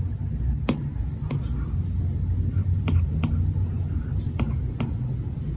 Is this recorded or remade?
recorded